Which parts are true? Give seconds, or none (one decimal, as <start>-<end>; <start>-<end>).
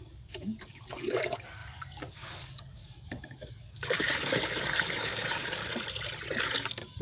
5.6-6.4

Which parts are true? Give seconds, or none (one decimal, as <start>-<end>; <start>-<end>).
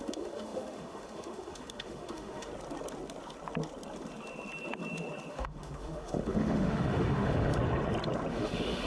2.5-5.3; 7.5-8.3